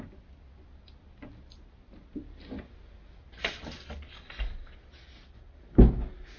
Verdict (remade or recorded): recorded